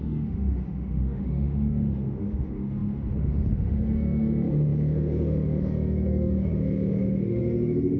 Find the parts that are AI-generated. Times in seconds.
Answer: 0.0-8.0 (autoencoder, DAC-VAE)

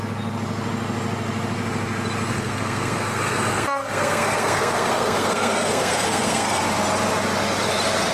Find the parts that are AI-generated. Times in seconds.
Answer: 2.3-6.6 (codec, SNAC)

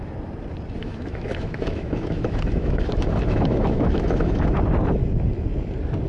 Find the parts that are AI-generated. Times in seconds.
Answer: 0.8-4.5 (autoencoder, DAC-VAE)

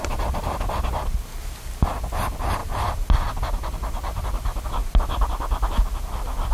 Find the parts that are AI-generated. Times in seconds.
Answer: none